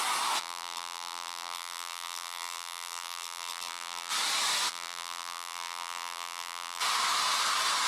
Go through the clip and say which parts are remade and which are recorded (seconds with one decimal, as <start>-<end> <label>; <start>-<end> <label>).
0.0-0.4 recorded; 0.4-4.1 remade; 4.1-4.7 recorded; 4.7-6.8 remade; 6.8-7.9 recorded